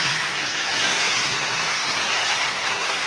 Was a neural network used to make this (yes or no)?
yes